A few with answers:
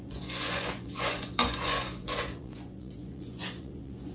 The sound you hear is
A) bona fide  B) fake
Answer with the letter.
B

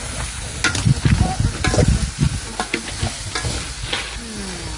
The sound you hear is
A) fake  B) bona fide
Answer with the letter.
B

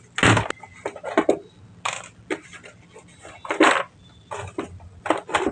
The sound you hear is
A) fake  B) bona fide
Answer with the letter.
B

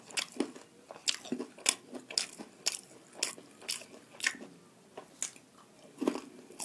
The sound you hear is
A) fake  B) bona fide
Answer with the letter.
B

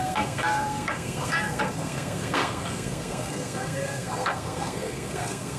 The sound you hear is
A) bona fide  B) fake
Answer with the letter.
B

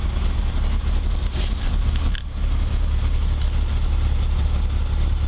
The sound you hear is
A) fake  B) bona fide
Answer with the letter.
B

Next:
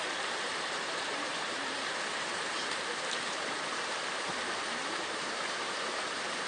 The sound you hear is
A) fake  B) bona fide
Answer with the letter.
A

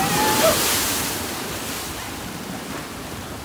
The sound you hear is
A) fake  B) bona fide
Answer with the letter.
B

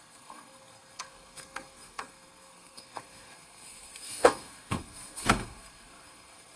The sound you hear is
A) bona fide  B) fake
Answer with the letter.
B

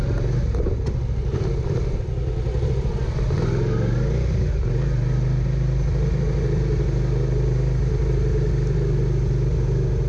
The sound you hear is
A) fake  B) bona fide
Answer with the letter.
B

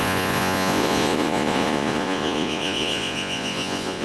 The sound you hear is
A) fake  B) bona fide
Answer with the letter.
A